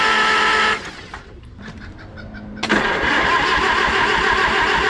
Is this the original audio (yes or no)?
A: no